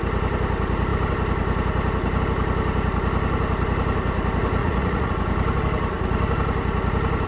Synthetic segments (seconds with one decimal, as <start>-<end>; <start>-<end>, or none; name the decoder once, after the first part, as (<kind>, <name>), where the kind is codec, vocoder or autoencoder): 4.6-5.1 (vocoder, Vocos)